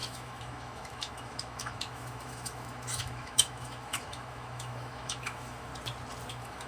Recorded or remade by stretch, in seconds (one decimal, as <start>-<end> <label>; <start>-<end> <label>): 0.0-5.7 remade; 5.7-6.3 recorded; 6.3-6.7 remade

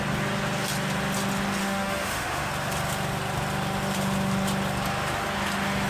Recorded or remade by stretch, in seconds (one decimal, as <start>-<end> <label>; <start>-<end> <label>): 0.0-1.6 recorded; 1.6-2.5 remade; 2.5-5.9 recorded

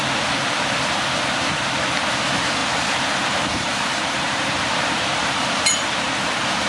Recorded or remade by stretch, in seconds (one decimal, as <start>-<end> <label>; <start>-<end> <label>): 0.0-2.6 recorded; 2.6-6.7 remade

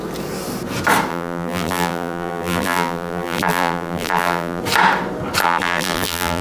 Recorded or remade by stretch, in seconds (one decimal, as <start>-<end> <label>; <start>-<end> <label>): 0.0-1.1 recorded; 1.1-4.6 remade; 4.6-5.4 recorded; 5.4-6.4 remade